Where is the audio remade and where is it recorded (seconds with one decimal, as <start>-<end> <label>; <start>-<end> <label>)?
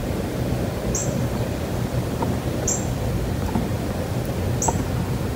0.0-1.0 recorded; 1.0-3.1 remade; 3.1-5.4 recorded